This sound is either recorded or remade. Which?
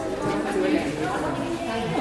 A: recorded